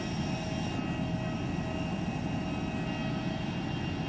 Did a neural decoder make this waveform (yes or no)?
no